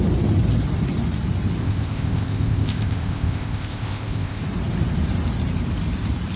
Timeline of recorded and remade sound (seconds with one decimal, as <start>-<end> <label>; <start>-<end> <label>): 0.0-1.6 recorded; 1.6-4.4 remade; 4.4-6.4 recorded